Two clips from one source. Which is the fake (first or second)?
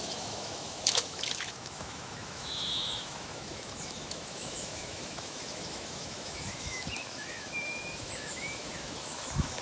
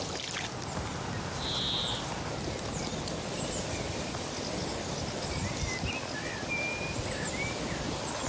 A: first